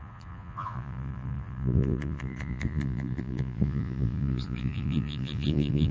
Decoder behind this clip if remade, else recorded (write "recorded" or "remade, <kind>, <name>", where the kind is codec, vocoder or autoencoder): remade, vocoder, Vocos